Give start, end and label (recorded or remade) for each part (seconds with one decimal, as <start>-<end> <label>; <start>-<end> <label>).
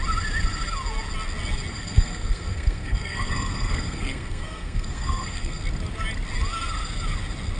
0.0-1.7 recorded; 1.7-5.6 remade; 5.6-7.6 recorded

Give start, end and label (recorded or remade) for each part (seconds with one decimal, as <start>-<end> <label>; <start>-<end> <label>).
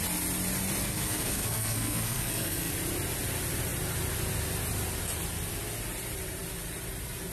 0.0-0.8 recorded; 0.8-2.7 remade; 2.7-7.3 recorded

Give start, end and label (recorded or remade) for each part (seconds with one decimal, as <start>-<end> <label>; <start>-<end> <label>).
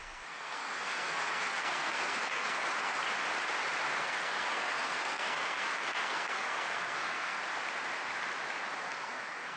0.0-3.0 remade; 3.0-4.0 recorded; 4.0-7.4 remade; 7.4-8.8 recorded; 8.8-9.6 remade